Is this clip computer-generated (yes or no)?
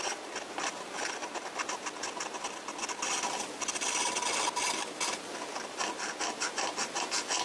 no